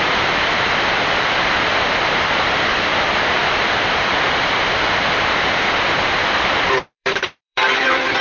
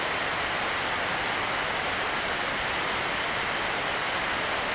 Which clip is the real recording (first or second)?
second